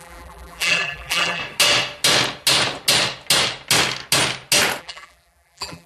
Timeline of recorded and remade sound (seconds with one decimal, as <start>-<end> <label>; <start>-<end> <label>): 0.0-1.4 remade; 1.4-4.8 recorded; 4.8-5.9 remade